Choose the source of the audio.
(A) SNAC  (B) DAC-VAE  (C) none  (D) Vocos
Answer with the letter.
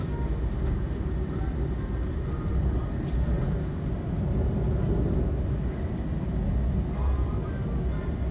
C